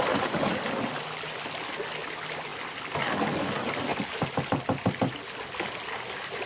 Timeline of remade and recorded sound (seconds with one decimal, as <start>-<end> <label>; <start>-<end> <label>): 0.0-6.5 recorded